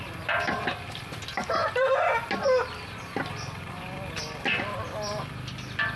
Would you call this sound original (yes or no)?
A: yes